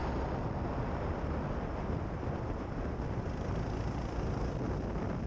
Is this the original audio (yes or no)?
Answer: yes